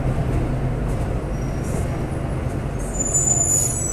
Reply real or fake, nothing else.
real